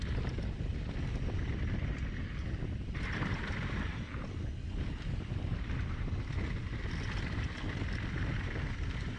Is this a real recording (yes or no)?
yes